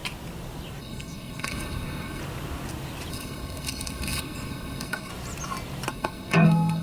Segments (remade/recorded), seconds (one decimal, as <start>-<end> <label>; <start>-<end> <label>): 0.0-0.8 recorded; 0.8-2.2 remade; 2.2-3.1 recorded; 3.1-5.1 remade; 5.1-5.9 recorded; 5.9-6.8 remade

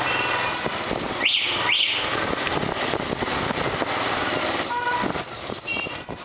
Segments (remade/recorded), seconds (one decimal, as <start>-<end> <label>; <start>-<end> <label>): 0.0-6.2 recorded

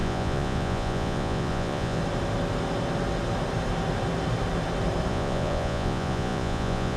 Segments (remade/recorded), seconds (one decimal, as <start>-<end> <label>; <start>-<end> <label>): 0.0-2.0 remade; 2.0-5.1 recorded; 5.1-7.0 remade

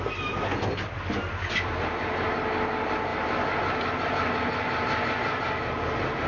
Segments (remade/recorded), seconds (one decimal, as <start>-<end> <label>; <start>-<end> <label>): 0.0-6.3 recorded

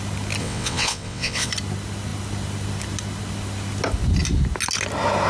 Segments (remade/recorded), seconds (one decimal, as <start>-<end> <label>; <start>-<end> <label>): 0.0-0.4 recorded; 0.4-1.5 remade; 1.5-5.3 recorded